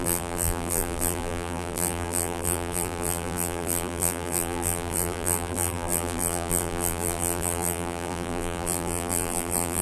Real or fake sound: fake